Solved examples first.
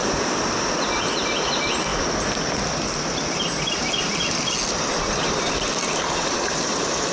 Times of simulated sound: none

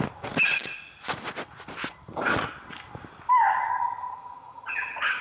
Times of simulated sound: 3.7-5.2 (vocoder, HiFi-GAN)